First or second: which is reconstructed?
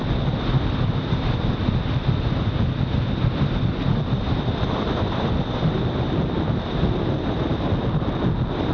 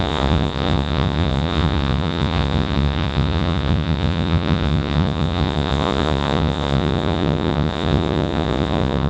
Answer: second